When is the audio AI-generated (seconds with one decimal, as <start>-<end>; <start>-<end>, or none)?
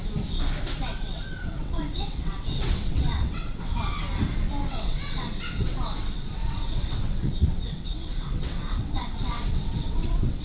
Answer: 0.8-3.7; 4.6-10.4